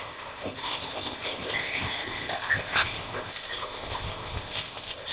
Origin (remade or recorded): remade